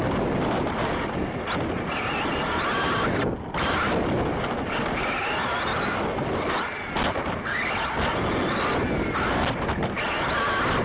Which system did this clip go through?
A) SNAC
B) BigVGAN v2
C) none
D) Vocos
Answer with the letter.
C